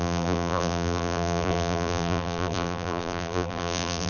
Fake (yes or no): yes